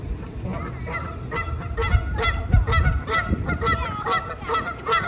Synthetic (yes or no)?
no